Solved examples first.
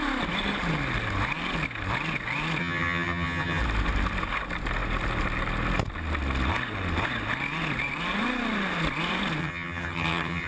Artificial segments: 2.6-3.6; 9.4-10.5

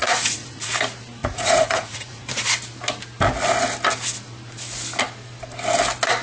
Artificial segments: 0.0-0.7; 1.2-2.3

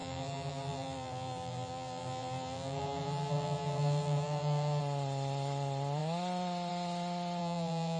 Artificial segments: 0.0-4.8; 7.4-8.0

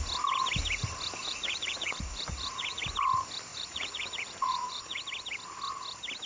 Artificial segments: 1.2-2.8; 3.5-5.0

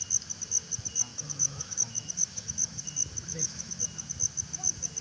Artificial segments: 1.1-2.8; 3.3-3.8

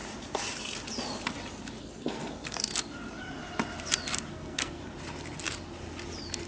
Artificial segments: 1.8-2.7; 4.3-4.8